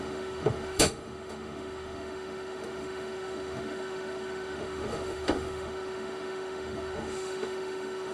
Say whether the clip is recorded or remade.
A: remade